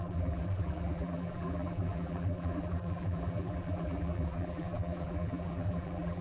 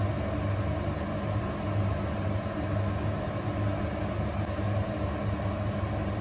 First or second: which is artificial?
first